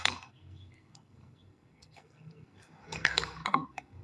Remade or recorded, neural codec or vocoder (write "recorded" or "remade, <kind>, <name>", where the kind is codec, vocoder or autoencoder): remade, codec, SNAC